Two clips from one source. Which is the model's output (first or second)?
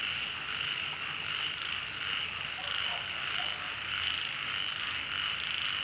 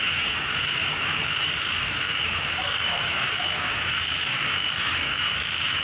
second